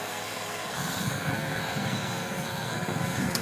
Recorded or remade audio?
remade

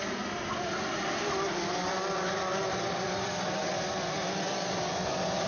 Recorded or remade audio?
recorded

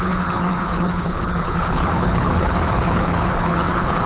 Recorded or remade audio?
remade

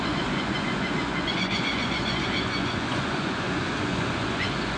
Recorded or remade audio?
remade